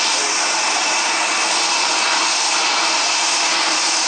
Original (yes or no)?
yes